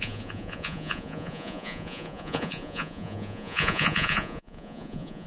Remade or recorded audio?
remade